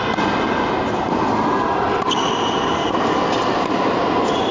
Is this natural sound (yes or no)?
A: yes